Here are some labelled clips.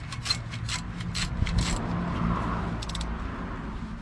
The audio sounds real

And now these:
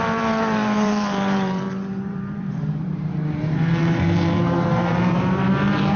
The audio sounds fake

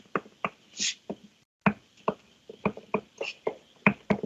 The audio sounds real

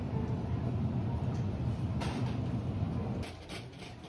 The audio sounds fake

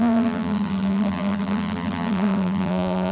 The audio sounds fake